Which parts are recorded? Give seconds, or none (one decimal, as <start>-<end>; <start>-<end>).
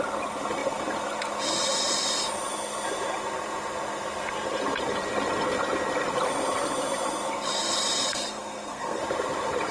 0.0-8.1; 9.0-9.7